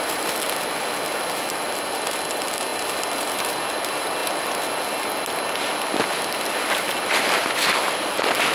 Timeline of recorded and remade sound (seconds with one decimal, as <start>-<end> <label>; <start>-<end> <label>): 0.0-8.5 recorded